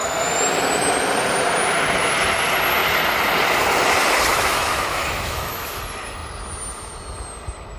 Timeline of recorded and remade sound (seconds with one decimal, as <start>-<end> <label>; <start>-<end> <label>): 0.0-4.3 recorded; 4.3-5.8 remade; 5.8-7.8 recorded